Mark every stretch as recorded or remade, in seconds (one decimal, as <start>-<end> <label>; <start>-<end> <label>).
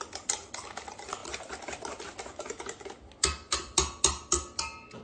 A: 0.0-5.0 recorded